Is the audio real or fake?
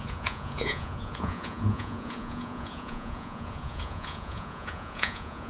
fake